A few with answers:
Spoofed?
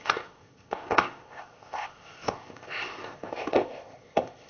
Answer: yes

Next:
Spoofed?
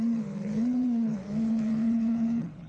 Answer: yes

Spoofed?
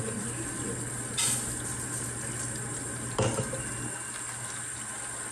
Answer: no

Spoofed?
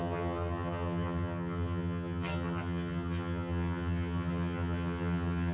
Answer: yes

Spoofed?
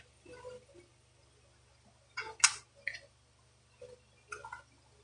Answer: no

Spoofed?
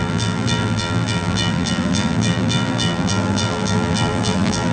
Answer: yes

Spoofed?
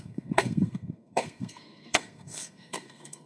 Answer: yes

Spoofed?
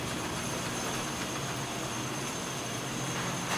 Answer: no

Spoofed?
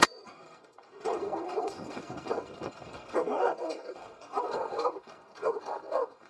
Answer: yes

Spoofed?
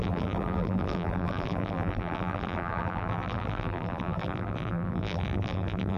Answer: yes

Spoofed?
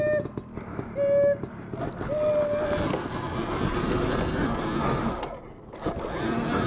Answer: no